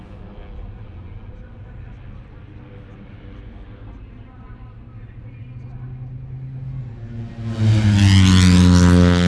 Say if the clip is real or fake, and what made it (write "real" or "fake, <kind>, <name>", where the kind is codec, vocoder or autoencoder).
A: real